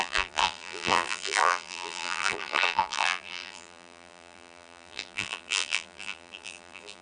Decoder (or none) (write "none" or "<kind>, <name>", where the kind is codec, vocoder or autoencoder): vocoder, BigVGAN v2